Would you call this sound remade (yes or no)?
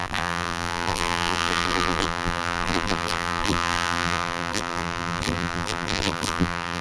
yes